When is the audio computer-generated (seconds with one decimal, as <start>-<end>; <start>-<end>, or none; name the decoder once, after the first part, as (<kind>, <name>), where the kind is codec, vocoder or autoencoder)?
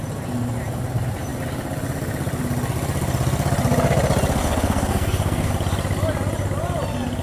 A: 4.4-5.5 (codec, SNAC)